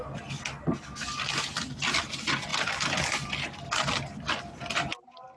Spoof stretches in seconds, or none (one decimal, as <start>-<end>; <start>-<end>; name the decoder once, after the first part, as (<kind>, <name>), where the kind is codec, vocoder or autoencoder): none